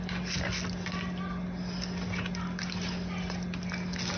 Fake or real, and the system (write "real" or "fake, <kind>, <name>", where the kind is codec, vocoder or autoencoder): real